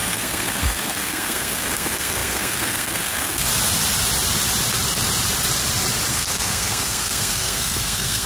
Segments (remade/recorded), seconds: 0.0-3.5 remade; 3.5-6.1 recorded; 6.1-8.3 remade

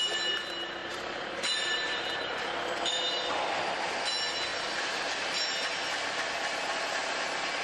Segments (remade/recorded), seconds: 0.0-0.8 recorded; 0.8-3.0 remade; 3.0-7.6 recorded

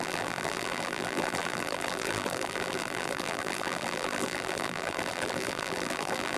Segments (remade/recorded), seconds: 0.0-6.4 remade

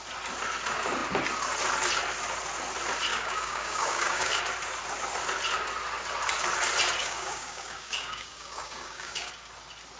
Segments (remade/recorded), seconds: 0.0-3.1 recorded; 3.1-4.4 remade; 4.4-7.0 recorded; 7.0-9.3 remade; 9.3-10.0 recorded